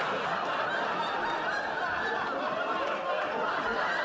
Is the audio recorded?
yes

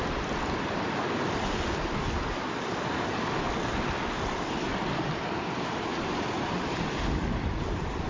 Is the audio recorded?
yes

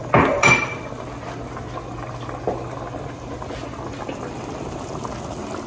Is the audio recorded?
yes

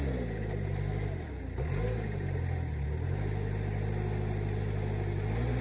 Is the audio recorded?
yes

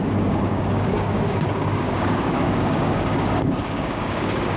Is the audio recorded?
no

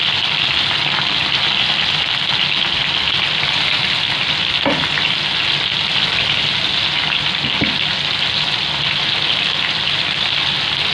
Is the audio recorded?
yes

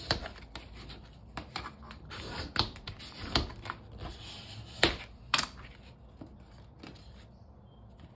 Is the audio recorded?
yes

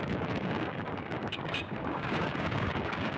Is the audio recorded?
no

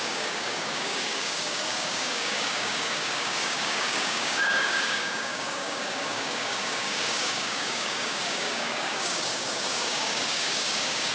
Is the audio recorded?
no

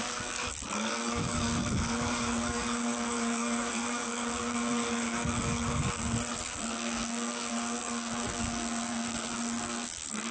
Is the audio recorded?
no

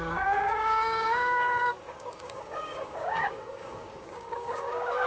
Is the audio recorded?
no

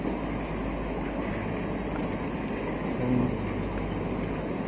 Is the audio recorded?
yes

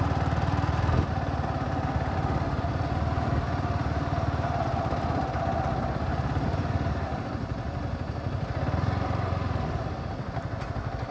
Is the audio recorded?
yes